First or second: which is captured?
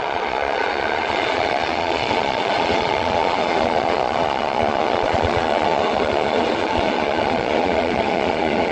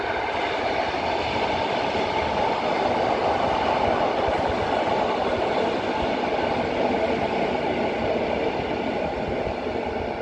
second